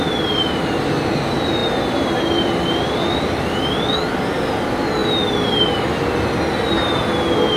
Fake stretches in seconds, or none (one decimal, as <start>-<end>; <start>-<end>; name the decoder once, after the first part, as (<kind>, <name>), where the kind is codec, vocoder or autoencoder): none